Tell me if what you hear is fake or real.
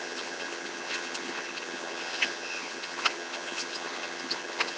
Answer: fake